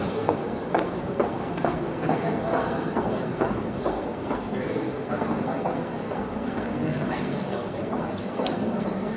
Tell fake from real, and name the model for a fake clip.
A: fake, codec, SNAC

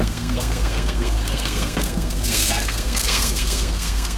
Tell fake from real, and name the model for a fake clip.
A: fake, codec, SNAC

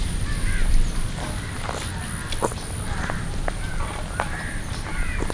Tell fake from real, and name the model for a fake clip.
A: real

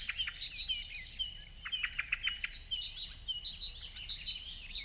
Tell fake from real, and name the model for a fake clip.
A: real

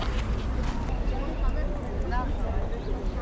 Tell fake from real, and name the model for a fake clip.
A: real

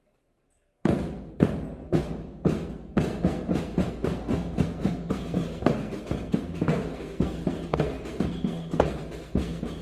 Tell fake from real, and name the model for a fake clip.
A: fake, codec, SNAC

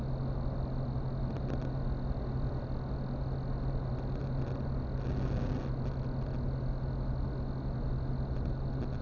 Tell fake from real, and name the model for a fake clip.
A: real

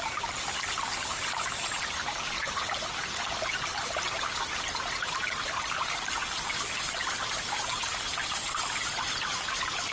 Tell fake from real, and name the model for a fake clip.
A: real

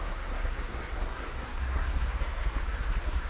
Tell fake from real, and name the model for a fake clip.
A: fake, codec, SNAC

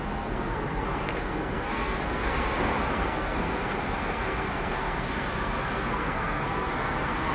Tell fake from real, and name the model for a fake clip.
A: fake, codec, SNAC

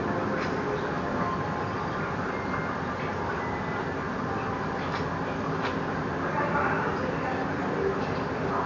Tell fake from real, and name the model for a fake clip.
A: real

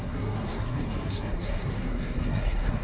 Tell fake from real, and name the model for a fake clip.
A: fake, codec, SNAC